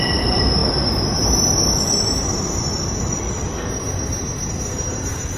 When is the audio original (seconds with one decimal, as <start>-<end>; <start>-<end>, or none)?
0.0-5.4